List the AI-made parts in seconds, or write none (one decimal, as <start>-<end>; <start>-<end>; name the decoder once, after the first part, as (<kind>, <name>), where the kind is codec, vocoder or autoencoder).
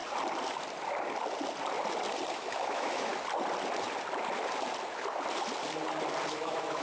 2.3-3.1 (autoencoder, DAC-VAE); 6.3-6.8